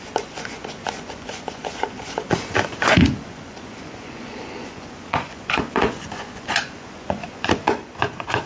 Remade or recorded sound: remade